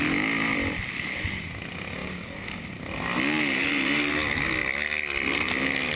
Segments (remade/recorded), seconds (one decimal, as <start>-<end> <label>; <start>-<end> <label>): 0.0-6.0 recorded